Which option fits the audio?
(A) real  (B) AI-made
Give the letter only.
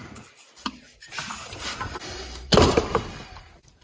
B